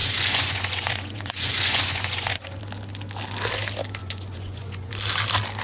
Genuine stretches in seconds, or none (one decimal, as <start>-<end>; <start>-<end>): 2.6-4.0; 4.9-5.6